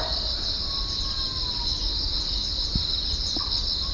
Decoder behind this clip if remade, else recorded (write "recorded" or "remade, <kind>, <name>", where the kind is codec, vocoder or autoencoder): recorded